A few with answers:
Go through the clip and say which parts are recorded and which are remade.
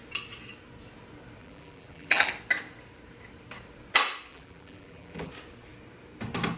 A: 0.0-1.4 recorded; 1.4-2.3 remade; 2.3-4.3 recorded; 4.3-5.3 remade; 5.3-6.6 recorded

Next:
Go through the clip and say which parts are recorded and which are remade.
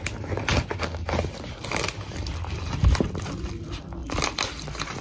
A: 0.0-4.0 recorded; 4.0-5.0 remade